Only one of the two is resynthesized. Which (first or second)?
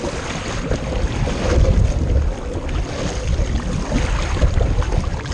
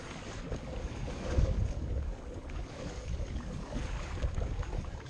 second